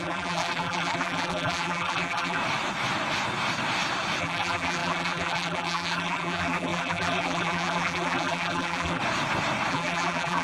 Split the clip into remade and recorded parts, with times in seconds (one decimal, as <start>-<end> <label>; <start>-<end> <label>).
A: 0.0-2.4 remade; 2.4-4.2 recorded; 4.2-9.0 remade; 9.0-9.7 recorded; 9.7-10.4 remade